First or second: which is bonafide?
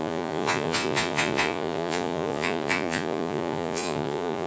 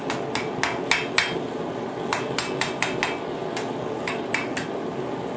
second